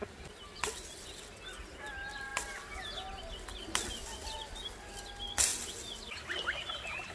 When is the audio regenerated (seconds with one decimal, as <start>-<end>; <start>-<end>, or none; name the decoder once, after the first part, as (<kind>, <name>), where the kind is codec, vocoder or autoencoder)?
none